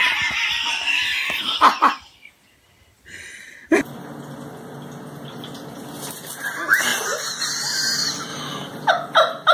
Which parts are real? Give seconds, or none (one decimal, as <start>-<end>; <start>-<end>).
0.0-8.3; 8.9-9.5